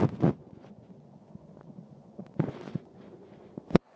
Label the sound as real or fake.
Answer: fake